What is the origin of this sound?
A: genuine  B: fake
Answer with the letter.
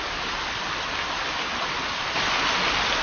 A